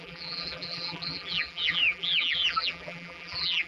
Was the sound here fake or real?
fake